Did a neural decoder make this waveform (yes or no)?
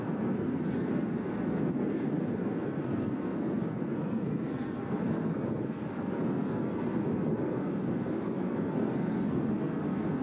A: yes